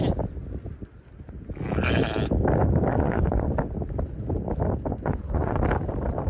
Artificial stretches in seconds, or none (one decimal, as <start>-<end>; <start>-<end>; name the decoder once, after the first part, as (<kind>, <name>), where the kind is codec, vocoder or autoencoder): 2.9-3.5 (vocoder, Vocos); 4.9-5.6